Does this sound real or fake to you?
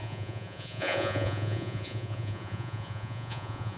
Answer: fake